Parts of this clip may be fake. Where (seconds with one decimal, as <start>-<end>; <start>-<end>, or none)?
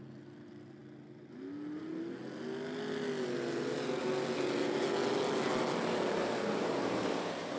6.2-7.6